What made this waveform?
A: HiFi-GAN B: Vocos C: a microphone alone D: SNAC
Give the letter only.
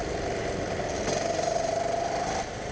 C